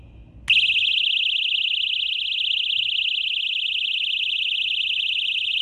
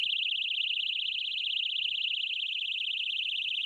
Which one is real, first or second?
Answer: first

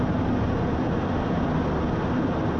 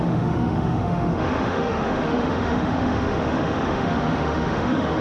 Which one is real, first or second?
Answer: first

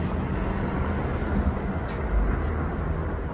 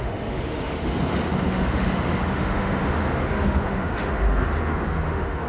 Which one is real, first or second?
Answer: first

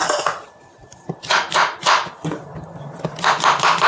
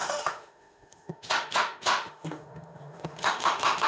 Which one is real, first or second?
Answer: first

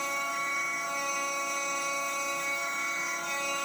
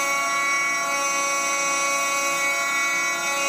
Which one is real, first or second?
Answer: second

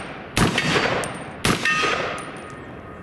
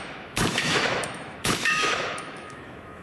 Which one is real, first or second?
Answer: first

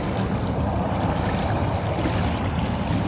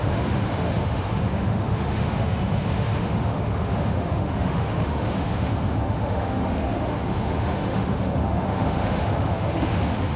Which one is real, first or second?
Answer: first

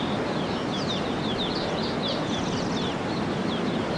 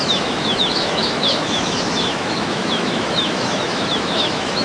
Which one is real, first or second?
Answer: first